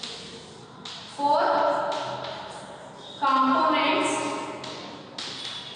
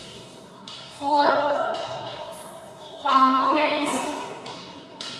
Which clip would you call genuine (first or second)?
first